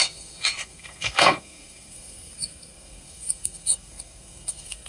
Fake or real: fake